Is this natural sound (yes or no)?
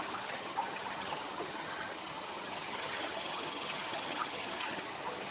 no